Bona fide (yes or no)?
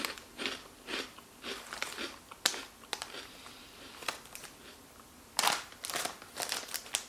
no